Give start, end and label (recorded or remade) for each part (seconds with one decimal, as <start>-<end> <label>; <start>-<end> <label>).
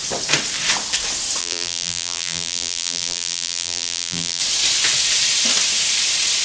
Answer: 0.0-1.4 recorded; 1.4-4.4 remade; 4.4-6.4 recorded